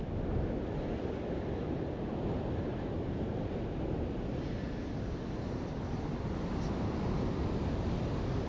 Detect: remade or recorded recorded